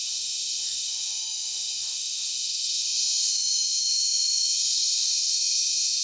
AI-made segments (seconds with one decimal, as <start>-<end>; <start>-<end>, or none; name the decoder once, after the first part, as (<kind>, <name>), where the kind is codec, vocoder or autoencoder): 0.0-6.0 (autoencoder, DAC-VAE)